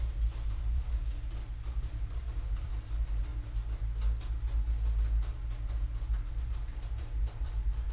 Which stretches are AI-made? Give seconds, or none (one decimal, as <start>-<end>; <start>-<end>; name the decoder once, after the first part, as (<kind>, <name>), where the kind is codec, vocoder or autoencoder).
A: 0.0-3.3 (vocoder, BigVGAN v2); 6.3-7.9

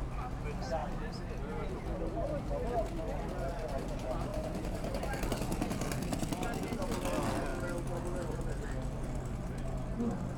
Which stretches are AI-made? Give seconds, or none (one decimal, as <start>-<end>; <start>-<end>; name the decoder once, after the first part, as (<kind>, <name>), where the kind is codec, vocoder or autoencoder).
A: 0.8-1.8 (vocoder, BigVGAN v2); 4.3-5.0

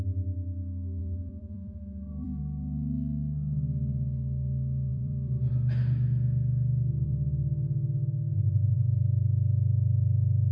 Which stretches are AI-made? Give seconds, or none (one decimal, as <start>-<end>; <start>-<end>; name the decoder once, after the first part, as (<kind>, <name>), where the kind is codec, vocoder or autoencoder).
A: 1.0-2.4 (vocoder, BigVGAN v2); 4.9-5.5

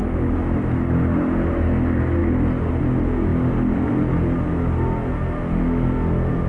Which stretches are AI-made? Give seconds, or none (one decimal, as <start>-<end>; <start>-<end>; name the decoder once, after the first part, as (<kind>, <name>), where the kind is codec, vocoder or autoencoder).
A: 3.3-3.9 (vocoder, BigVGAN v2)

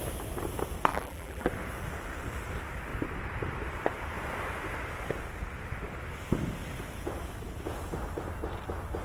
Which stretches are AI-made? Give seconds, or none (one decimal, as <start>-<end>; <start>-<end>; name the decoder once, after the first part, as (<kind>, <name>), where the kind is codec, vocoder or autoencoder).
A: 0.9-1.5 (vocoder, BigVGAN v2)